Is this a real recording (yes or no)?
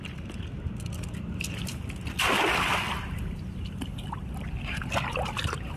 yes